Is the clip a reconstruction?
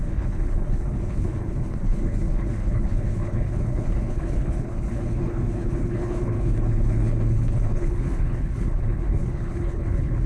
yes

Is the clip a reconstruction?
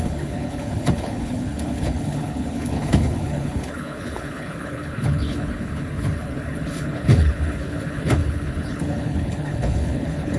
yes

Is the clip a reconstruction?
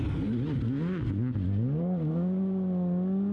no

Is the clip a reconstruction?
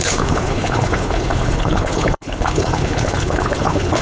yes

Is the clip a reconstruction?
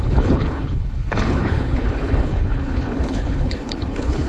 yes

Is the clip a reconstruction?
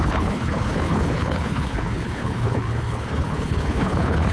yes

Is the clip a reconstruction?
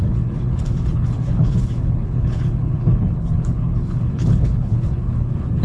yes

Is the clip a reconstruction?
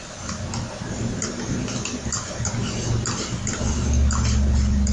no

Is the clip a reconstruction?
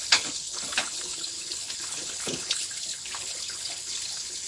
yes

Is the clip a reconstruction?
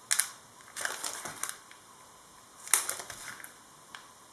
no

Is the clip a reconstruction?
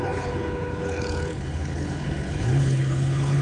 yes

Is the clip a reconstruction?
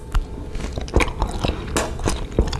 no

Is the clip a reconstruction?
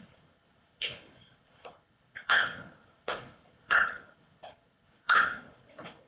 yes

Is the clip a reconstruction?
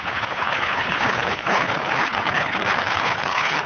yes